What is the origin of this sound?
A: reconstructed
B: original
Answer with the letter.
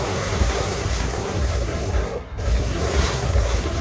A